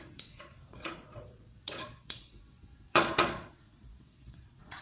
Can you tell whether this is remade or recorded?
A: remade